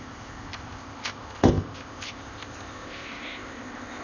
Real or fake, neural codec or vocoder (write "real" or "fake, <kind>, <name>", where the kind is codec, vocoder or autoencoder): fake, codec, ZipCodec